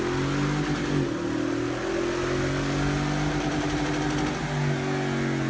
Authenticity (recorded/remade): recorded